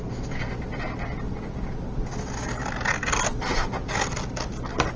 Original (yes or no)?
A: yes